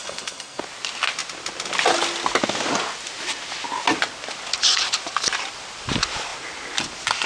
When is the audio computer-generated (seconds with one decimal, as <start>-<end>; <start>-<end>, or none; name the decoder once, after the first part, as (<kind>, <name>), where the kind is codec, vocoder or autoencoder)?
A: 0.0-0.6 (codec, SNAC)